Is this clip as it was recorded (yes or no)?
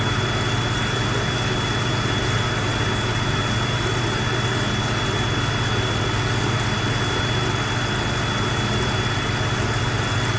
yes